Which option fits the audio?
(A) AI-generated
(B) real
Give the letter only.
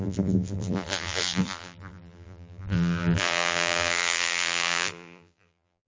A